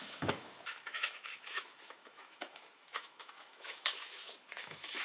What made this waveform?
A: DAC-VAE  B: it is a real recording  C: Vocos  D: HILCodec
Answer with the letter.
A